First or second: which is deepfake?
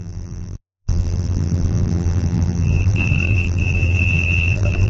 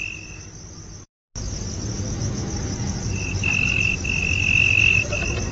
first